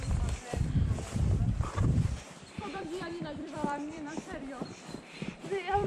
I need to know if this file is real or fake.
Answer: fake